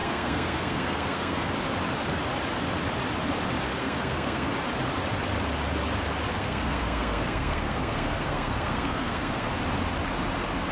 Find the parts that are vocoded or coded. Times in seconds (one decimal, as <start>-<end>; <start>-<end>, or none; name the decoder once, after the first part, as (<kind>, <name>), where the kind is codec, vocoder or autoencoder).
0.0-1.5 (codec, SNAC); 3.8-4.5; 6.3-9.5